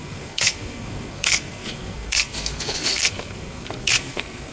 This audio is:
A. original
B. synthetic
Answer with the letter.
B